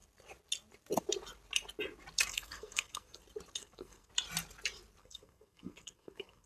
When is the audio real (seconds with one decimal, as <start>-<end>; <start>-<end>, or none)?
0.0-2.3; 3.2-3.6; 4.1-5.0